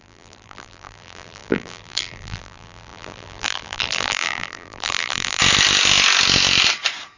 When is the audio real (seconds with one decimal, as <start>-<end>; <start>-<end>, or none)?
5.4-7.2